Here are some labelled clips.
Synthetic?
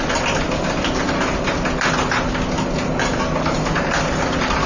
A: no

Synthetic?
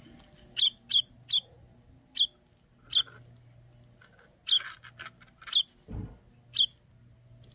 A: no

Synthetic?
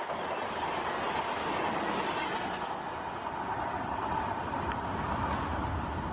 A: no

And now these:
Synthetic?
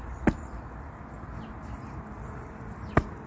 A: no